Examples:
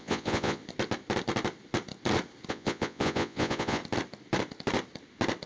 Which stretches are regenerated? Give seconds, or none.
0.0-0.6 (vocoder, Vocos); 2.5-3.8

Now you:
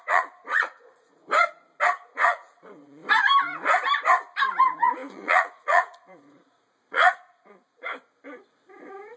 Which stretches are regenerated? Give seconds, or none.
0.0-1.2 (vocoder, Vocos); 2.1-3.0; 4.6-7.9

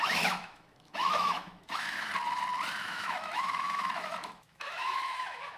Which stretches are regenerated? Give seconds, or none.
0.0-2.1 (autoencoder, DAC-VAE); 2.8-5.6

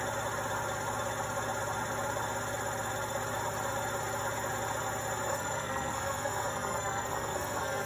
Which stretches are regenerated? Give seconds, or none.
5.3-7.9 (codec, SNAC)

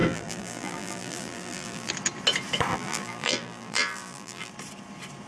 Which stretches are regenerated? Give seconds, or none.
0.0-1.9 (vocoder, BigVGAN v2); 2.7-4.5

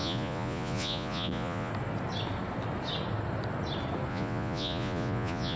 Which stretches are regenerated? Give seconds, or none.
0.0-1.7 (vocoder, Vocos); 4.1-5.6